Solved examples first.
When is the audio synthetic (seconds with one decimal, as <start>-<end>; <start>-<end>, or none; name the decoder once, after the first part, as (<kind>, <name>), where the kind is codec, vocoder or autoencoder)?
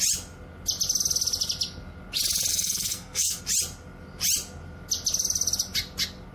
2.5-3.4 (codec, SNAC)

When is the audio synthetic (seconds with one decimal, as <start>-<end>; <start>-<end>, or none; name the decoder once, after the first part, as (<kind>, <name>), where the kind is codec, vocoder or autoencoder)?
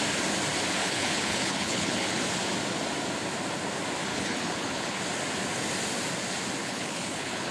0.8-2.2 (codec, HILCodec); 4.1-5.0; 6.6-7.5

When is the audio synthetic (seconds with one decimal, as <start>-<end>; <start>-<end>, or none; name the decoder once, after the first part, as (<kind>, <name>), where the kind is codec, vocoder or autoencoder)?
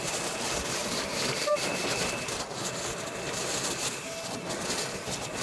0.8-4.0 (vocoder, BigVGAN v2)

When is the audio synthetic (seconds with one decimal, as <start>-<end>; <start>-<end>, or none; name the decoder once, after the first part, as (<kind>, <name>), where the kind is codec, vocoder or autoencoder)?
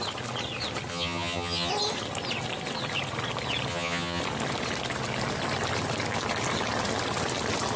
0.9-1.7 (vocoder, HiFi-GAN); 3.7-4.2